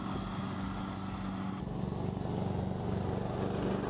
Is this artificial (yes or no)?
no